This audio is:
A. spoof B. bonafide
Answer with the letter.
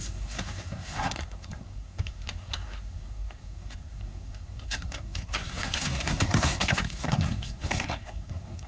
A